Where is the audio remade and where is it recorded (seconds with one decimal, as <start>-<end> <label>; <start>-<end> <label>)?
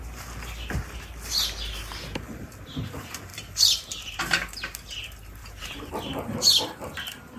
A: 0.0-3.3 recorded; 3.3-4.2 remade; 4.2-5.4 recorded; 5.4-5.9 remade; 5.9-7.4 recorded